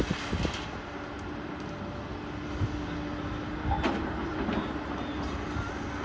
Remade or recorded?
recorded